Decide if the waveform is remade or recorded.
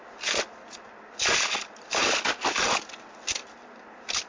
recorded